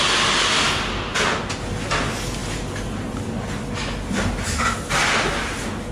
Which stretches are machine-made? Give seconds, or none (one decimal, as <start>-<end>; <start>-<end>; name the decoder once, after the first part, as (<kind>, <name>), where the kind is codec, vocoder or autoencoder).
none